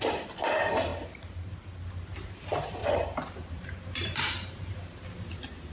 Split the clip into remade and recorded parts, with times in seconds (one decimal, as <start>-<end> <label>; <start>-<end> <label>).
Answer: 0.0-2.8 recorded; 2.8-5.1 remade; 5.1-5.7 recorded